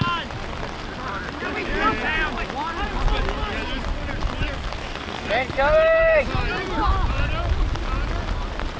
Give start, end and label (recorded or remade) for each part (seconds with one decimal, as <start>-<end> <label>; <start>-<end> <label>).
0.0-4.8 recorded; 4.8-5.3 remade; 5.3-8.8 recorded

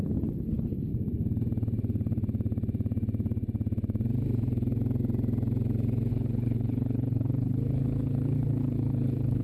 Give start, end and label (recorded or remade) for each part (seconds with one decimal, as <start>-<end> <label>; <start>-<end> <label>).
0.0-0.9 remade; 0.9-6.1 recorded; 6.1-9.4 remade